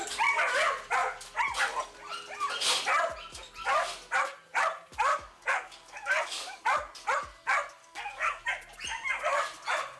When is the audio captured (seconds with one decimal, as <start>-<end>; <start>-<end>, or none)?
0.0-5.1; 6.6-7.8; 8.4-10.0

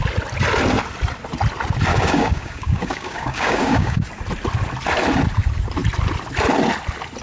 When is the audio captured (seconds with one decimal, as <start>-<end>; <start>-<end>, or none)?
0.0-1.9; 4.1-7.2

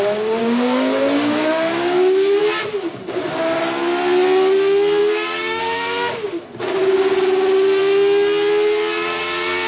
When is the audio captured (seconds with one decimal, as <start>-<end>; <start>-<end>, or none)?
0.0-0.4; 2.4-5.0; 5.6-9.7